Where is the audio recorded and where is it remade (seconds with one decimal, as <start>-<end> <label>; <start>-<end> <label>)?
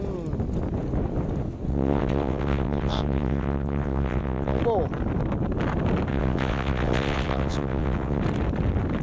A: 0.0-1.7 recorded; 1.7-4.6 remade; 4.6-6.1 recorded; 6.1-8.2 remade; 8.2-9.0 recorded